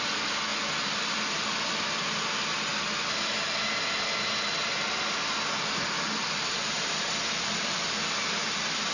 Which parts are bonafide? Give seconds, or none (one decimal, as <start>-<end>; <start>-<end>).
0.0-6.2; 7.1-8.9